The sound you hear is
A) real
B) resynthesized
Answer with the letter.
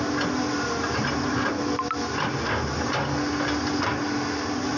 A